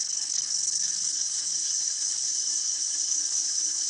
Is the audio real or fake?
fake